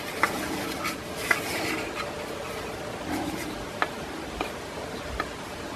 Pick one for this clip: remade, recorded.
recorded